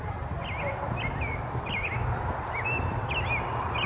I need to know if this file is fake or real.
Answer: real